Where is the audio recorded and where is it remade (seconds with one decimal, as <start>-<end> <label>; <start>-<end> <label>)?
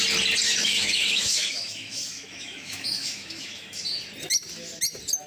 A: 0.0-0.6 recorded; 0.6-3.8 remade; 3.8-5.3 recorded